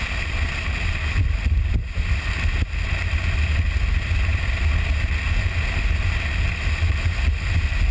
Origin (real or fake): real